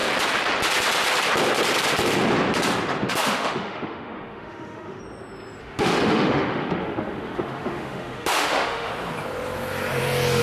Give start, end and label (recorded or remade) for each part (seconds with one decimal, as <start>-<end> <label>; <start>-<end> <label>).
0.0-3.1 recorded; 3.1-5.0 remade; 5.0-5.6 recorded; 5.6-8.9 remade; 8.9-10.4 recorded